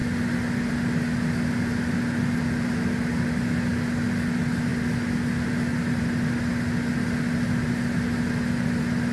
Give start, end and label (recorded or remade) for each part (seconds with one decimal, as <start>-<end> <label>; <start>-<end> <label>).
0.0-9.1 recorded